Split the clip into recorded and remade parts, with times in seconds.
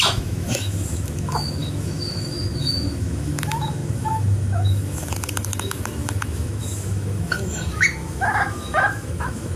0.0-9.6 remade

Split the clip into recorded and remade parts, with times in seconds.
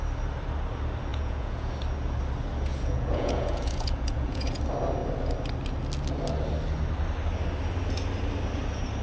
0.0-1.1 recorded; 1.1-1.7 remade; 1.7-2.7 recorded; 2.7-4.6 remade; 4.6-9.0 recorded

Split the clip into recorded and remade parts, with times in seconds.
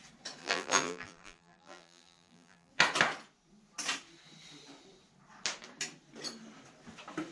0.0-0.4 recorded; 0.4-2.7 remade; 2.7-7.3 recorded